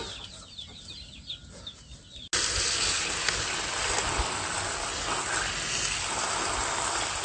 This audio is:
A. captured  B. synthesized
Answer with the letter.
A